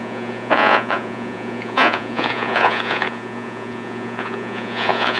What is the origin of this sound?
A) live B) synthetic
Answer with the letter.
B